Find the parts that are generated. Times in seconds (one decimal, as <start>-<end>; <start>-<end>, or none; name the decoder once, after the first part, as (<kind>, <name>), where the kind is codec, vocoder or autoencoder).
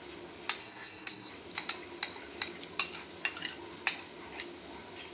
0.6-1.3 (codec, SNAC)